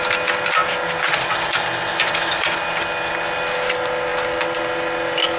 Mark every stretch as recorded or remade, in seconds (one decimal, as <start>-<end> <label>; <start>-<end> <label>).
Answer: 0.0-5.4 recorded

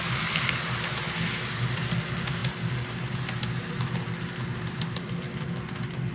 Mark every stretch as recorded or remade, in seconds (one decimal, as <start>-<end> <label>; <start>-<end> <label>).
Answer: 0.0-6.1 recorded

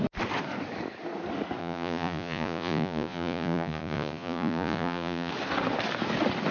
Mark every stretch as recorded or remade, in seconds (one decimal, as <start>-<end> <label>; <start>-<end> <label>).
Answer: 0.0-1.6 recorded; 1.6-5.3 remade; 5.3-6.5 recorded

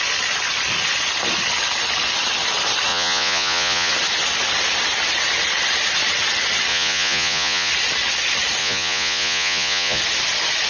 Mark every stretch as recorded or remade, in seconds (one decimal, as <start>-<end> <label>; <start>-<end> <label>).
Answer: 0.0-2.9 recorded; 2.9-3.9 remade; 3.9-6.7 recorded; 6.7-7.7 remade; 7.7-8.6 recorded; 8.6-10.0 remade; 10.0-10.7 recorded

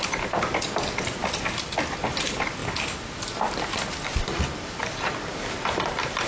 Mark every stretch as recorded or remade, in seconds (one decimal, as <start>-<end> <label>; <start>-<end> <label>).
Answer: 0.0-6.3 recorded